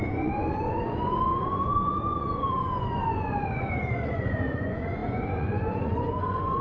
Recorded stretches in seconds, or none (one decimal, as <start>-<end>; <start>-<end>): none